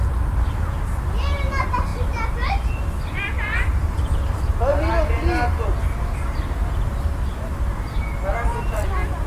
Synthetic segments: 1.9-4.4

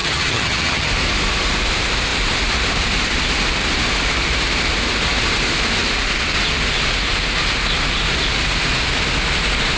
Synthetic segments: 0.0-0.9